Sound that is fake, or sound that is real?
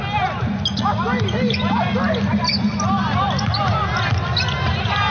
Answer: real